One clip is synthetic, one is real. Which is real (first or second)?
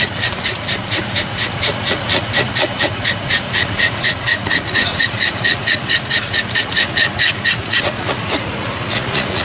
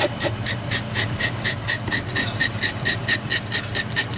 second